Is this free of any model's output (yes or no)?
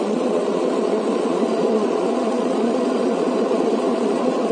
no